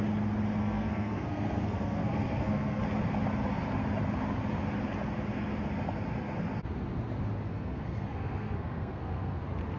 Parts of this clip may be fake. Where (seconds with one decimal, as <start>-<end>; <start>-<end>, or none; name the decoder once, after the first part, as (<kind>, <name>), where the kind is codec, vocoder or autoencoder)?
0.6-2.8 (codec, SNAC); 7.5-9.4